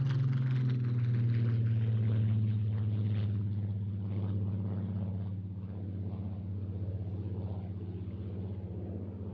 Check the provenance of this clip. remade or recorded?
recorded